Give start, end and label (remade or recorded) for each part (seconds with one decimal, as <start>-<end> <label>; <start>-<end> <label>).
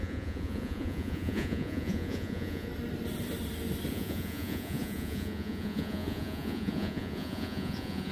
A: 0.0-2.7 remade; 2.7-3.9 recorded; 3.9-8.1 remade